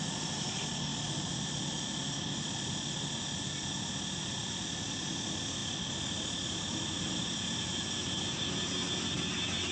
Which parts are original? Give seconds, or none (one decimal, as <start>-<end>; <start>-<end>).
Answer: 0.0-9.7